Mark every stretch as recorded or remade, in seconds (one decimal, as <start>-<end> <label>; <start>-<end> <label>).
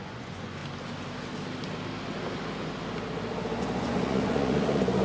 0.0-0.6 remade; 0.6-3.6 recorded; 3.6-5.0 remade